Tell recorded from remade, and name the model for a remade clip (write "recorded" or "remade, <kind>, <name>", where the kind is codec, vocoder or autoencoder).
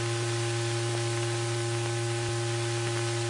recorded